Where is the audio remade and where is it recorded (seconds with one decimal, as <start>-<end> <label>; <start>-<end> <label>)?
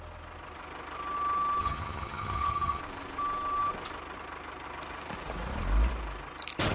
0.0-1.6 recorded; 1.6-2.8 remade; 2.8-6.7 recorded